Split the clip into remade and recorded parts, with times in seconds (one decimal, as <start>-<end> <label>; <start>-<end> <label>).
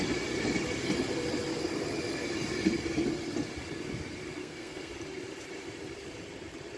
0.0-4.4 recorded; 4.4-4.9 remade; 4.9-6.8 recorded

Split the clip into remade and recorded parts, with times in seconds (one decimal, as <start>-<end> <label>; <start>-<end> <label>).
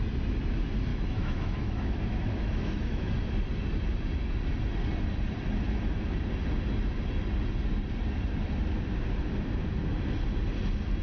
0.0-0.9 recorded; 0.9-3.1 remade; 3.1-11.0 recorded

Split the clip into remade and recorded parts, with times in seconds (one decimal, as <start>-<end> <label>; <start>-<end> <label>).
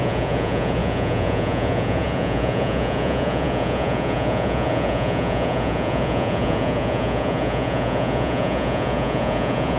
0.0-9.8 remade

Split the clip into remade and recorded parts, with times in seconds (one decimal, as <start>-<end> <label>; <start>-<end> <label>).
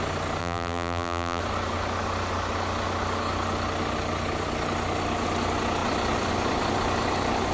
0.0-0.4 recorded; 0.4-1.4 remade; 1.4-7.5 recorded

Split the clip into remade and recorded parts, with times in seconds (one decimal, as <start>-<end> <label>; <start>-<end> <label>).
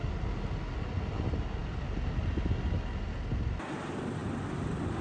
0.0-5.0 recorded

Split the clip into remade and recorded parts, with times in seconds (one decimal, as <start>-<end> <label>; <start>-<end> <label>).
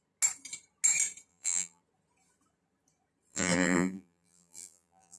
0.0-1.3 recorded; 1.3-1.8 remade; 1.8-3.3 recorded; 3.3-5.2 remade